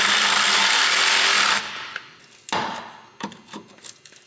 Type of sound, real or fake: real